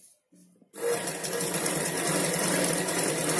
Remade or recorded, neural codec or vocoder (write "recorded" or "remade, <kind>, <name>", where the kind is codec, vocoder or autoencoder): recorded